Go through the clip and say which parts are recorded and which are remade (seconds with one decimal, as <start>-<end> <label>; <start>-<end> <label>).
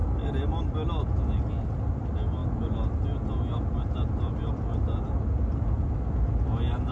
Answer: 0.0-6.9 recorded